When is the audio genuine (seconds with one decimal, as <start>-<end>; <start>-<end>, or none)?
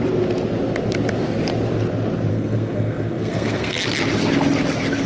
0.0-2.3; 3.8-5.1